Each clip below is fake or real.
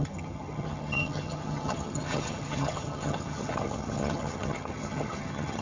fake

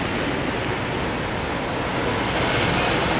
real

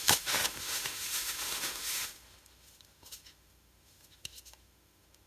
fake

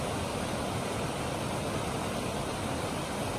real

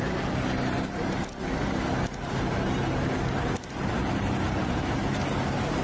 real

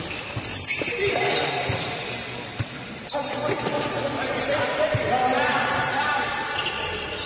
fake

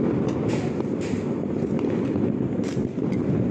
real